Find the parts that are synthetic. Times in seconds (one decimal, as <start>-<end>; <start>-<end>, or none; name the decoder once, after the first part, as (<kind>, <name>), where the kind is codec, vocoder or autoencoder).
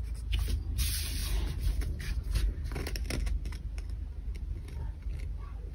none